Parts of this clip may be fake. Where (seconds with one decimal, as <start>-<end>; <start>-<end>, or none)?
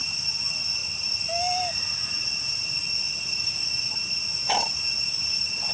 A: none